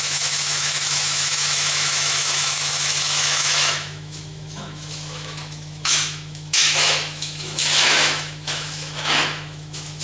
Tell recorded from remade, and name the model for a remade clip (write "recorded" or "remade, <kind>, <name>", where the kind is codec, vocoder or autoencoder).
remade, autoencoder, DAC-VAE